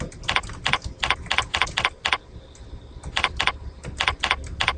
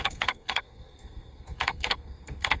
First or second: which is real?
first